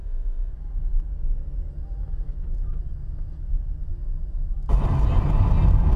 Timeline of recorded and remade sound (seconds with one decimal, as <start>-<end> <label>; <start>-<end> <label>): 0.0-0.5 remade; 0.5-6.0 recorded